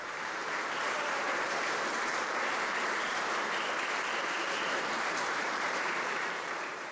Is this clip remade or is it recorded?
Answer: remade